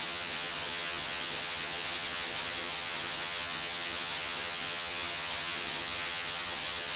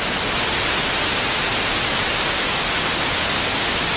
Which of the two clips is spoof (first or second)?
first